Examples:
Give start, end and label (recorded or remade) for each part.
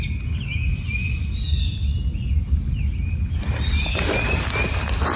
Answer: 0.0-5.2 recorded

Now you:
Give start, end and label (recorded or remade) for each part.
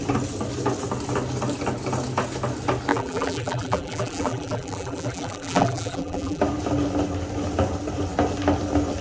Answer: 0.0-2.9 recorded; 2.9-6.4 remade; 6.4-9.0 recorded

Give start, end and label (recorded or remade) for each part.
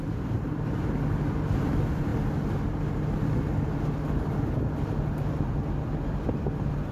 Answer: 0.0-0.9 remade; 0.9-6.9 recorded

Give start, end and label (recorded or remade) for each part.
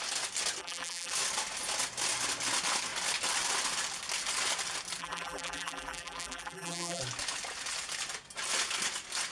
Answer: 0.0-0.6 recorded; 0.6-1.1 remade; 1.1-5.0 recorded; 5.0-7.0 remade; 7.0-9.3 recorded